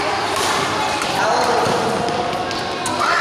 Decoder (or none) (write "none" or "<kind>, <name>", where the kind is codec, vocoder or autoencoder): vocoder, BigVGAN v2